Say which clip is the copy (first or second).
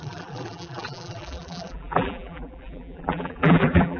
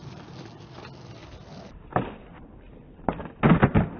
first